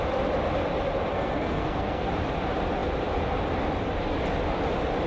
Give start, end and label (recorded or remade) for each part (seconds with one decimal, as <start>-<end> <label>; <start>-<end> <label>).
0.0-1.1 recorded; 1.1-2.1 remade; 2.1-5.1 recorded